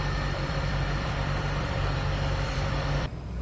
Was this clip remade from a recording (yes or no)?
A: yes